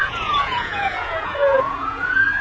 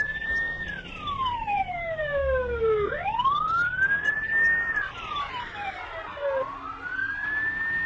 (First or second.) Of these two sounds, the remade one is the first